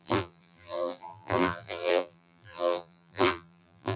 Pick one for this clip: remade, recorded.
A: remade